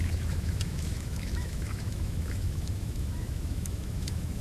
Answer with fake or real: fake